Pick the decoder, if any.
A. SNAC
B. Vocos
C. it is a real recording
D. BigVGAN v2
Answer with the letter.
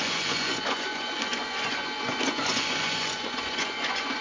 B